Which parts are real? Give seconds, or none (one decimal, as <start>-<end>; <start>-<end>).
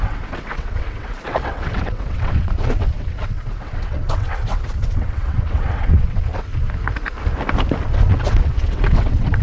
6.5-7.8